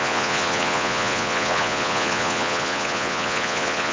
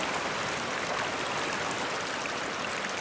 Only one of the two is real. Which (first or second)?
second